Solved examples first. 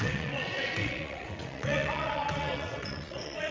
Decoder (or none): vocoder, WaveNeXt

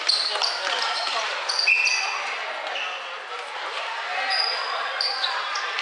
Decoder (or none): none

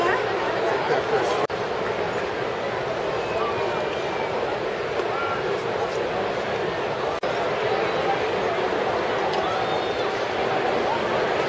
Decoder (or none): none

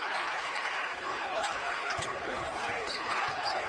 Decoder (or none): codec, HILCodec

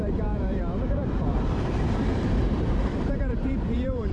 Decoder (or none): vocoder, BigVGAN v2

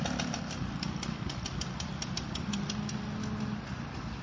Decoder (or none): none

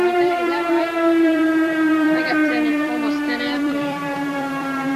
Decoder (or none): vocoder, BigVGAN v2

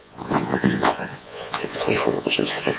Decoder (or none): vocoder, Vocos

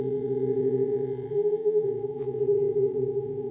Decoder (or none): vocoder, Vocos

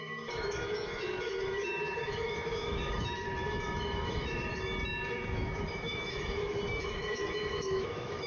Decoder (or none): autoencoder, DAC-VAE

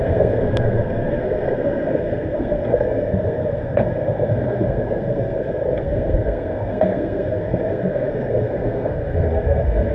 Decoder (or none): codec, SNAC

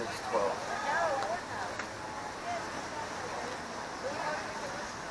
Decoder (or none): none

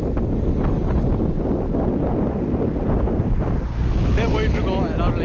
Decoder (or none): none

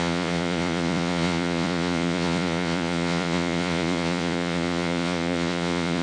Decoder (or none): vocoder, Vocos